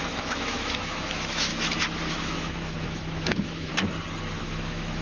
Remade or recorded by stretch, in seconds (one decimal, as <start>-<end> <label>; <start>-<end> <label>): 0.0-1.5 remade; 1.5-2.1 recorded; 2.1-3.7 remade; 3.7-4.4 recorded; 4.4-5.0 remade